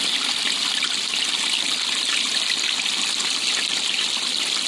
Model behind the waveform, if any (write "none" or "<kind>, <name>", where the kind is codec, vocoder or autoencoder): none